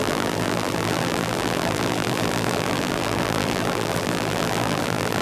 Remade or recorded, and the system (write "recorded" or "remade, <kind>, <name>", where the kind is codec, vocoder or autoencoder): remade, vocoder, BigVGAN v2